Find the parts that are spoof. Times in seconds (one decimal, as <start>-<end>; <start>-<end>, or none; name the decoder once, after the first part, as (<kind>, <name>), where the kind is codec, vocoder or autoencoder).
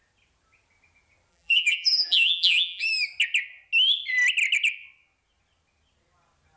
1.3-2.9 (vocoder, BigVGAN v2)